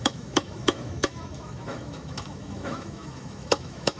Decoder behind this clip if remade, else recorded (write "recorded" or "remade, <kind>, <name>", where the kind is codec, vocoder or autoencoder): remade, autoencoder, DAC-VAE